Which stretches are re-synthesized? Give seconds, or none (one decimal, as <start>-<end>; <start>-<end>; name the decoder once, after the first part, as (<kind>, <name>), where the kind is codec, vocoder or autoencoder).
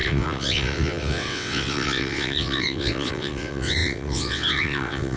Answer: 0.0-5.2 (vocoder, WaveNeXt)